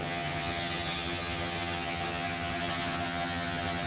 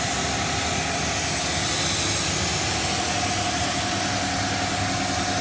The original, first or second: second